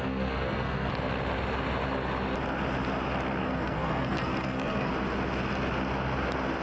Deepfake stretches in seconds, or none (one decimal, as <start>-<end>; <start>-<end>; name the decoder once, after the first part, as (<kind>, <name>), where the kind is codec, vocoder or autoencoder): 0.0-0.9 (codec, SNAC); 3.4-4.9